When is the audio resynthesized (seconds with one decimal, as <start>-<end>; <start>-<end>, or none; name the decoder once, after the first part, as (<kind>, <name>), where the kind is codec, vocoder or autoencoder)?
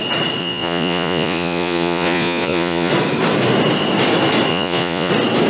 0.4-2.9 (vocoder, Vocos); 4.5-5.1